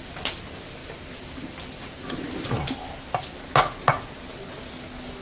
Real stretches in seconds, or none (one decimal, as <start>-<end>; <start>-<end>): 0.0-5.2